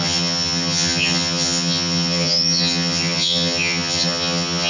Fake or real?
fake